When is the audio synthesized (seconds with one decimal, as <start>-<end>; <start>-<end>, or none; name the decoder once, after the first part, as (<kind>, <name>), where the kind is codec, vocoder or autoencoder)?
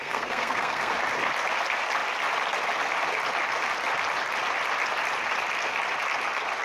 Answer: 0.0-0.9 (codec, SNAC)